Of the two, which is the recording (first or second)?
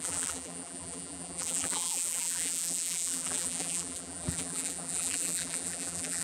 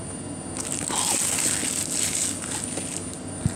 second